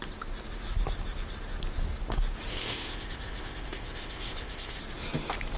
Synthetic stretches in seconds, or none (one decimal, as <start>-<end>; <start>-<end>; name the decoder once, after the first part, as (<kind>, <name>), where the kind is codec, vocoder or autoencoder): 2.5-4.8 (codec, ZipCodec)

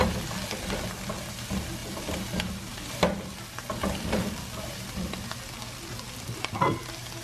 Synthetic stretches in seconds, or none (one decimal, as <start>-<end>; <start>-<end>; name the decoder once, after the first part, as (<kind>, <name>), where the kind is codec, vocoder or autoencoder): 1.8-6.1 (vocoder, BigVGAN v2)

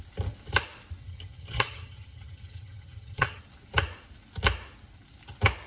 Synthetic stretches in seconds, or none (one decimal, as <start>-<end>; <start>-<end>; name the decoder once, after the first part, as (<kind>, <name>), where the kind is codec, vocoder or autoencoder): 1.0-3.4 (vocoder, HiFi-GAN)